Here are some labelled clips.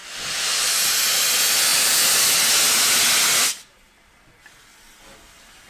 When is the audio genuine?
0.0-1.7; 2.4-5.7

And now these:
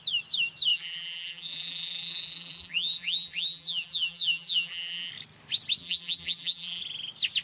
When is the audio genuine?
0.0-0.7; 5.1-5.8; 6.8-7.4